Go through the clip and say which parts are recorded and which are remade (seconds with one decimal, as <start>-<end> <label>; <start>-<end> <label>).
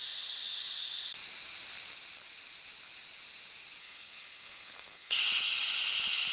0.0-3.8 recorded; 3.8-5.2 remade; 5.2-6.3 recorded